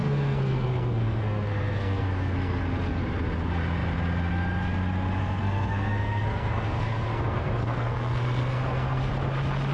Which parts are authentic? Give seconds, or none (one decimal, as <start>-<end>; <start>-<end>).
3.0-5.2; 9.1-9.7